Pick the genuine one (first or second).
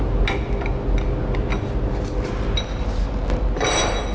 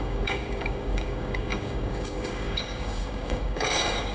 first